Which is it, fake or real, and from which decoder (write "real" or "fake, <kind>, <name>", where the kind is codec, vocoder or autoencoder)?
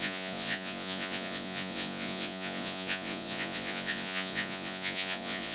fake, vocoder, Vocos